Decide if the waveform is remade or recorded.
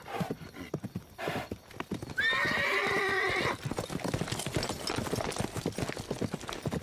recorded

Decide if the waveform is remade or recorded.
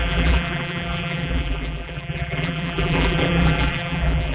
remade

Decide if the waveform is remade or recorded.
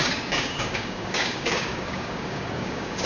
remade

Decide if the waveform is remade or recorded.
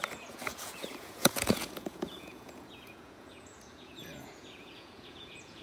remade